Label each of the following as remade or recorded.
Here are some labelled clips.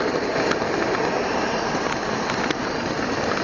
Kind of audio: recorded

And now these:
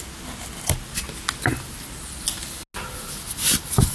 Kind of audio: recorded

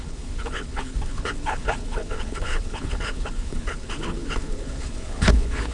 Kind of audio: remade